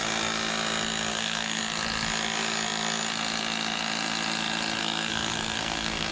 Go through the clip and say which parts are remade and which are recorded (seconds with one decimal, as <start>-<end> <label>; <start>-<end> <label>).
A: 0.0-1.1 recorded; 1.1-1.6 remade; 1.6-4.8 recorded; 4.8-6.1 remade